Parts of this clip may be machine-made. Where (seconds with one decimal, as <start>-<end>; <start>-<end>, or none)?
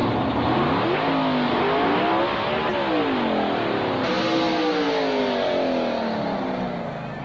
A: none